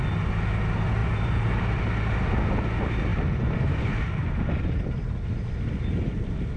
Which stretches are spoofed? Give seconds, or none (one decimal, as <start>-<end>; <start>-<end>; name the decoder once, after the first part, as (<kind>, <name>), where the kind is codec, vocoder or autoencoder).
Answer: 1.0-1.6 (vocoder, BigVGAN v2); 3.1-4.9